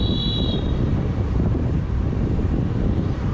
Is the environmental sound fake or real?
fake